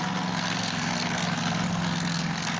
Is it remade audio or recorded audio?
remade